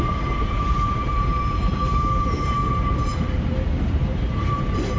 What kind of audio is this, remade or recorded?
remade